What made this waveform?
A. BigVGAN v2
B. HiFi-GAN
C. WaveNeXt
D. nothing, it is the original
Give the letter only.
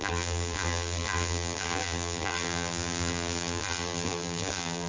A